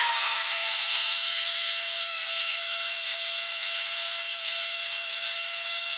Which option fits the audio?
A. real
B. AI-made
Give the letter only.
B